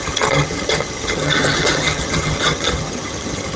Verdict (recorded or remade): remade